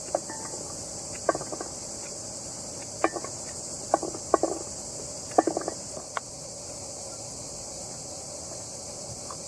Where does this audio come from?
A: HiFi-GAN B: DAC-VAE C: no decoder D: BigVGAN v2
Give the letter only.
C